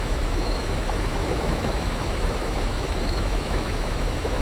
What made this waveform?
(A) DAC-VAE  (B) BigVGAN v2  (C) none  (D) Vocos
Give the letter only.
A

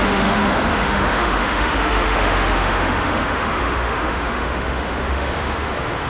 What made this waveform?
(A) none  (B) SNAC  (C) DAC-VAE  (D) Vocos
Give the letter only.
C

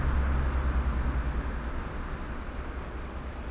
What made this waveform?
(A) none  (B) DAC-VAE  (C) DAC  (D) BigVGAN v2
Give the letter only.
A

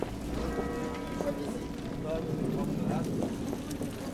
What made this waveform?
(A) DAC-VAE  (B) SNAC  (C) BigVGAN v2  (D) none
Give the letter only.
D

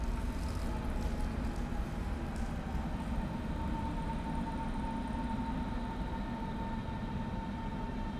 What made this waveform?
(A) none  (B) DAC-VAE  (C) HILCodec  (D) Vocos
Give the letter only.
A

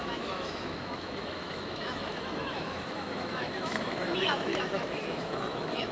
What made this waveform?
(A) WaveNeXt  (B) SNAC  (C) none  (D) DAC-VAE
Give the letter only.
D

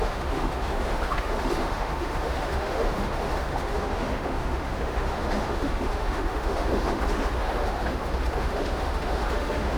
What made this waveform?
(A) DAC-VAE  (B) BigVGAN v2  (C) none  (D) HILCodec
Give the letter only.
A